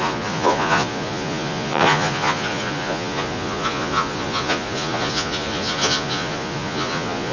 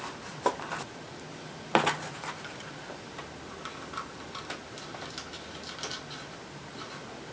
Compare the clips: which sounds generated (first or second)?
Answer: first